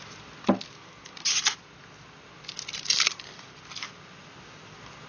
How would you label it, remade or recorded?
recorded